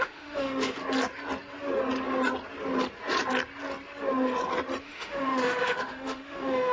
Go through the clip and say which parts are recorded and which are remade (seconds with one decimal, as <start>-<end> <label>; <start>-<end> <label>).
0.0-0.8 remade; 0.8-4.8 recorded; 4.8-6.7 remade